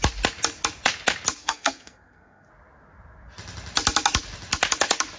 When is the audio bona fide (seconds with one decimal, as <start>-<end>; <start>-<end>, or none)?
0.0-1.4; 2.5-5.2